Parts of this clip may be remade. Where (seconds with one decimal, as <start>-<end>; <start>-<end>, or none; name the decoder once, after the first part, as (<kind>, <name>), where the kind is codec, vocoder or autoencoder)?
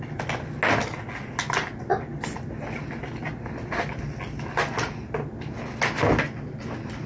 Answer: none